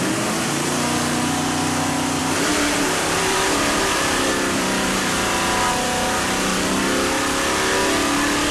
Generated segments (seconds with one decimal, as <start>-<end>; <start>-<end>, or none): 2.2-5.7; 6.5-7.1